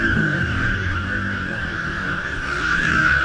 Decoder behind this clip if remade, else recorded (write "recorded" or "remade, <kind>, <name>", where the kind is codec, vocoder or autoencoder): remade, codec, DAC